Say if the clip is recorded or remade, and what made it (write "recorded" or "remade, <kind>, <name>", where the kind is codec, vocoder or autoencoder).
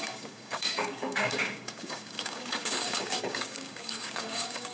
remade, codec, DAC